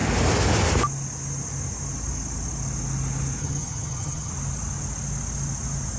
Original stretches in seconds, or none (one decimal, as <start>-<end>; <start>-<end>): 0.0-3.4; 4.3-6.0